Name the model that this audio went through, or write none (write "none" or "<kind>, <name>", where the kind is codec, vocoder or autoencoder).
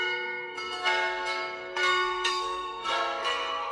codec, SNAC